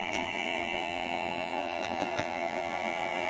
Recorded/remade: remade